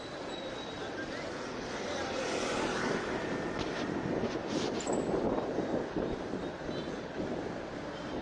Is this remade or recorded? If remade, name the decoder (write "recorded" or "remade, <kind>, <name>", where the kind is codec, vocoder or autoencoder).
recorded